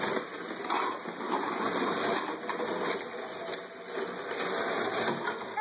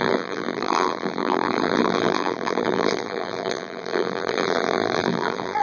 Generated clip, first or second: second